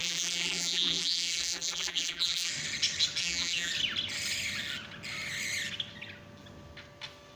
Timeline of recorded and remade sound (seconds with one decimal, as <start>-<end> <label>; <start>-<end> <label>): 0.0-2.5 remade; 2.5-3.2 recorded; 3.2-3.7 remade; 3.7-7.4 recorded